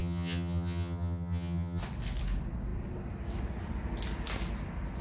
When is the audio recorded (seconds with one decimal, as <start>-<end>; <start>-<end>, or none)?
1.8-5.0